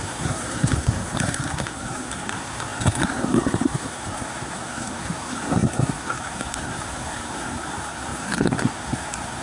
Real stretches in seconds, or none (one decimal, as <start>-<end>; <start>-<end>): none